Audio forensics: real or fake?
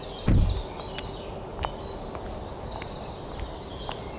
real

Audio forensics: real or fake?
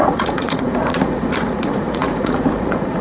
fake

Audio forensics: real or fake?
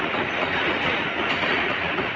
fake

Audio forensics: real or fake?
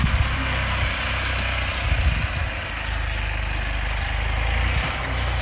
real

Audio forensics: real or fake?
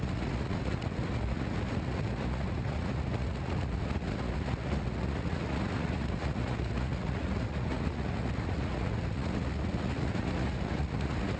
fake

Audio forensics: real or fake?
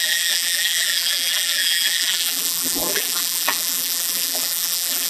fake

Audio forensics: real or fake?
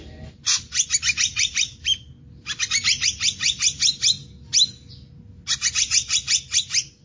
real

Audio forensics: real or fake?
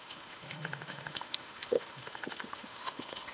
fake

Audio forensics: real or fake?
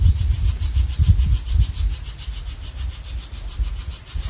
real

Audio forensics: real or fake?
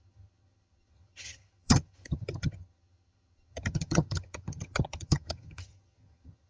fake